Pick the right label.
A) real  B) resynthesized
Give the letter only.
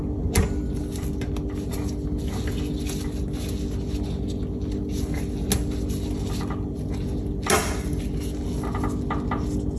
A